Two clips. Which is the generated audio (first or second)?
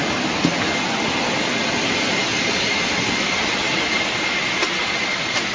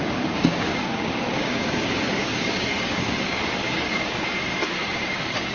second